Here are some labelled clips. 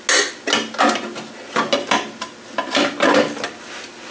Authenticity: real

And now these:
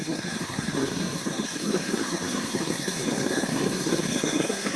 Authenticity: fake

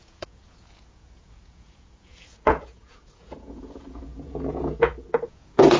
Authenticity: fake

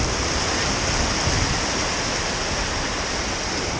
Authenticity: real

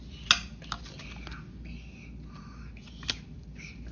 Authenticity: real